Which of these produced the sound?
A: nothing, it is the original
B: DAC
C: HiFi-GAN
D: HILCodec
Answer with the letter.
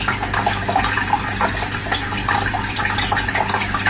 A